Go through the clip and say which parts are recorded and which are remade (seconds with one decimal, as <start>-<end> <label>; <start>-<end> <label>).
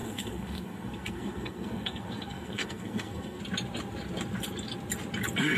0.0-3.4 remade; 3.4-5.6 recorded